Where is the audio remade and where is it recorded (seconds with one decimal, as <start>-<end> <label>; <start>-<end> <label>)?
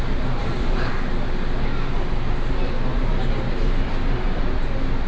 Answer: 0.0-0.4 recorded; 0.4-0.9 remade; 0.9-2.9 recorded; 2.9-4.4 remade; 4.4-5.1 recorded